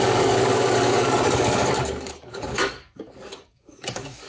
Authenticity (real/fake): fake